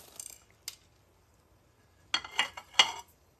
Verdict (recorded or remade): recorded